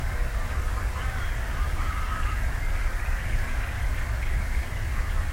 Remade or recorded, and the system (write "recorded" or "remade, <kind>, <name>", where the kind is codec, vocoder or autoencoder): remade, codec, DAC